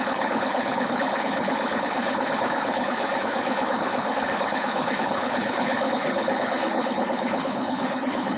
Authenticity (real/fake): fake